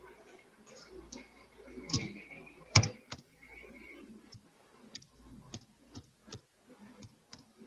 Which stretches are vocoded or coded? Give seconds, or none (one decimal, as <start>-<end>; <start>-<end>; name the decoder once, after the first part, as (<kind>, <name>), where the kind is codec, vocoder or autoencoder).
0.0-6.2 (vocoder, BigVGAN v2); 6.8-7.7